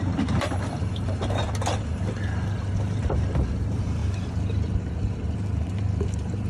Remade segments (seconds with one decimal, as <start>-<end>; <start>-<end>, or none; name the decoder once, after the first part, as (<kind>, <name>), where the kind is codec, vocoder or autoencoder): 0.0-1.4 (vocoder, BigVGAN v2); 2.3-4.0